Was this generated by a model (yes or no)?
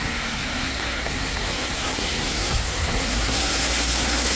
yes